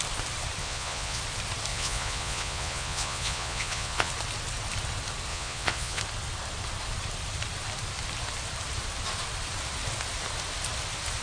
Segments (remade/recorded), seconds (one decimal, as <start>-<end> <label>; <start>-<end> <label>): 0.0-0.6 recorded; 0.6-1.2 remade; 1.2-1.7 recorded; 1.7-4.1 remade; 4.1-5.3 recorded; 5.3-6.0 remade; 6.0-11.2 recorded